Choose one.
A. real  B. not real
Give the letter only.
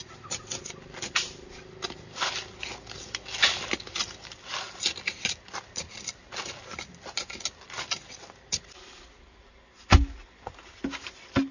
A